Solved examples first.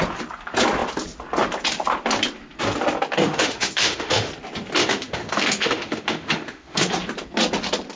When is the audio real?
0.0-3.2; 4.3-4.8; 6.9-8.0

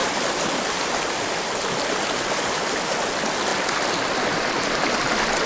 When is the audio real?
0.0-5.5

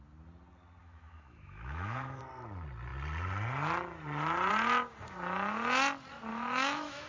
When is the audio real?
0.0-0.8; 2.2-6.3

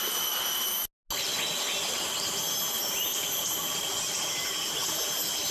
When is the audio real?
0.0-5.5

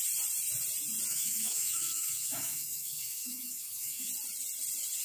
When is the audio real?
0.0-1.1; 4.1-5.0

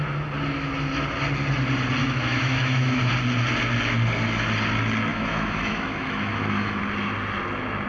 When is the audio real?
0.0-2.0; 3.1-5.1; 6.8-7.9

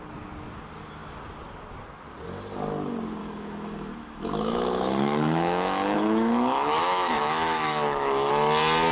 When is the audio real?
0.0-3.2; 8.3-8.9

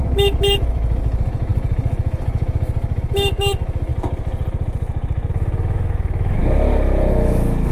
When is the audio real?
3.9-5.3; 6.4-7.1